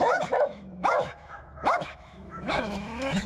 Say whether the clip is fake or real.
fake